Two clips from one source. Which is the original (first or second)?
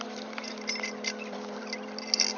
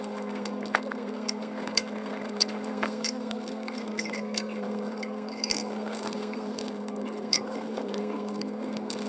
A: first